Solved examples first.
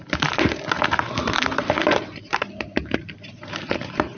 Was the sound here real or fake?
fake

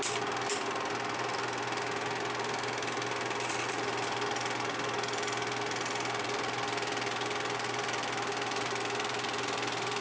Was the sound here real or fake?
real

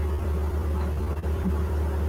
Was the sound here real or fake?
fake